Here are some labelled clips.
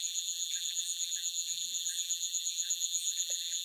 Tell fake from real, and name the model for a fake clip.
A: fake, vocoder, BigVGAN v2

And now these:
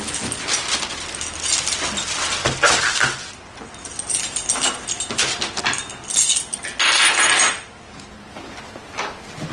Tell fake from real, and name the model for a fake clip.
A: real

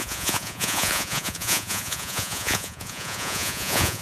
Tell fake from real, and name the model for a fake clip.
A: fake, vocoder, Vocos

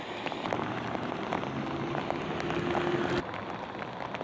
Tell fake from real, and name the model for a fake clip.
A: real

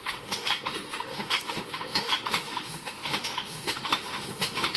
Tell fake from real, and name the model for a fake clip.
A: fake, autoencoder, DAC-VAE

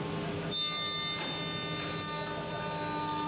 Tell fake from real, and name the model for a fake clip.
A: real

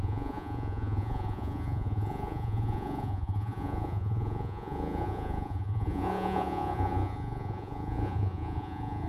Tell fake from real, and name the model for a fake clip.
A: fake, vocoder, Vocos